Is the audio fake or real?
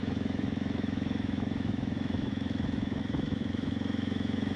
fake